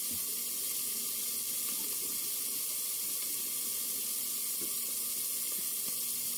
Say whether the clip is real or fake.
real